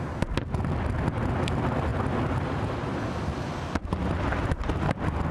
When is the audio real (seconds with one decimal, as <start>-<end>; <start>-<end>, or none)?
0.0-5.3